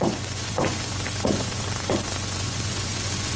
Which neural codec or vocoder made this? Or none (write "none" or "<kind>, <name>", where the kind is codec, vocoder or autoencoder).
vocoder, Vocos